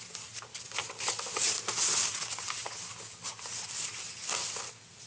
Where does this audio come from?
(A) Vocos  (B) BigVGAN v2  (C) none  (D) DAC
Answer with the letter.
C